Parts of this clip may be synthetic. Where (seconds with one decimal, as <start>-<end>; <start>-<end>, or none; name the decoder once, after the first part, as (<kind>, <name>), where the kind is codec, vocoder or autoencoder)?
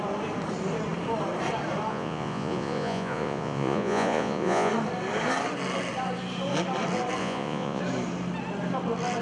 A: 1.9-4.7 (vocoder, Vocos); 7.2-7.8